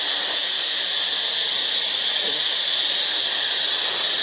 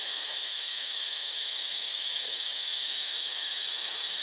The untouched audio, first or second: first